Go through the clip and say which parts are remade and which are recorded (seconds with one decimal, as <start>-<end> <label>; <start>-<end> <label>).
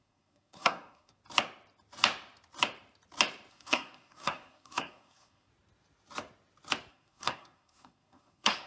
0.0-1.2 remade; 1.2-3.5 recorded; 3.5-5.5 remade; 5.5-6.9 recorded; 6.9-8.7 remade